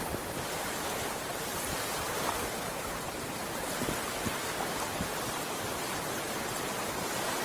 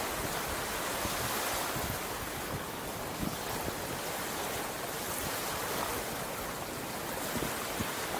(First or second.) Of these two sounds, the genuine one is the second